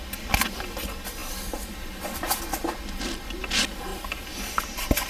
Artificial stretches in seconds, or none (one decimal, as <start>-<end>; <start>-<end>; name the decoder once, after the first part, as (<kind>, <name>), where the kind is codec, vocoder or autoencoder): 1.2-2.4 (vocoder, BigVGAN v2); 3.9-4.6